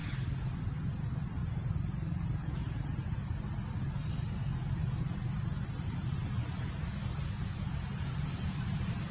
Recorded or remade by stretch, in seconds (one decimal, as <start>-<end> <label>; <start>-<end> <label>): 0.0-1.4 recorded; 1.4-3.7 remade; 3.7-4.8 recorded; 4.8-6.6 remade; 6.6-9.1 recorded